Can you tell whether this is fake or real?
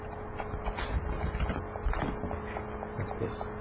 real